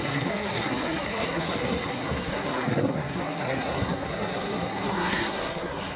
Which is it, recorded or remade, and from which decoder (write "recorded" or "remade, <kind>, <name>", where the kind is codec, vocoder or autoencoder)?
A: remade, codec, SNAC